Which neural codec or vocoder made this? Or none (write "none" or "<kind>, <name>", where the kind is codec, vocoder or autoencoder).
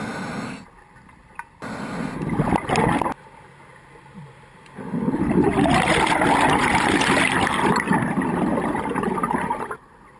none